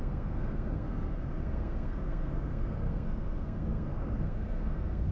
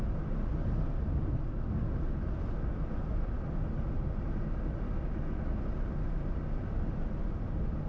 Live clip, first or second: second